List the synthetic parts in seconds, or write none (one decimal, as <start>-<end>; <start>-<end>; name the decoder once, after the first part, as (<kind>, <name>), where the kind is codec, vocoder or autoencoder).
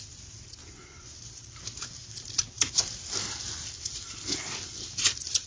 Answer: 0.6-1.2 (vocoder, Vocos)